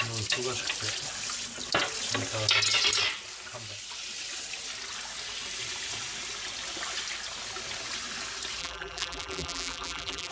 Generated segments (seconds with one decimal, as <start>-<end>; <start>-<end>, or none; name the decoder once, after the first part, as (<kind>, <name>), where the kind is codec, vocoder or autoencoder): 8.6-10.3 (vocoder, BigVGAN v2)

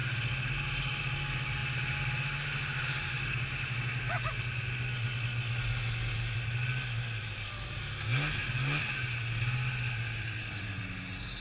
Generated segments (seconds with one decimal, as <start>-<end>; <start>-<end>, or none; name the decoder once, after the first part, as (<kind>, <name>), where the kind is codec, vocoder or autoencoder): none

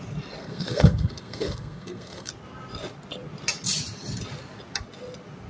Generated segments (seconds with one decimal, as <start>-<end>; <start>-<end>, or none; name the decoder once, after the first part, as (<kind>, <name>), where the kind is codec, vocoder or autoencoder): 0.4-2.3 (codec, SNAC)

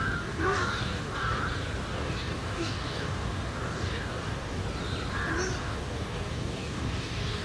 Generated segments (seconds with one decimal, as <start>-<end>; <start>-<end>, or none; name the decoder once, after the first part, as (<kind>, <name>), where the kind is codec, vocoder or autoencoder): 0.0-1.4 (codec, DAC); 2.0-4.6; 5.6-7.4